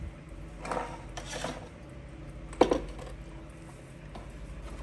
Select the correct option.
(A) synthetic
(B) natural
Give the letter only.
B